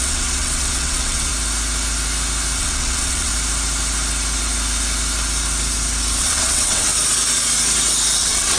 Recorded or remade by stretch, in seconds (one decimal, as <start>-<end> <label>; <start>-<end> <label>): 0.0-1.3 remade; 1.3-2.6 recorded; 2.6-3.3 remade; 3.3-6.2 recorded; 6.2-6.9 remade; 6.9-8.2 recorded; 8.2-8.6 remade